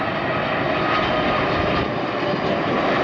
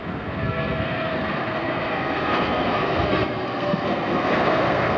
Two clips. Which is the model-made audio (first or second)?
second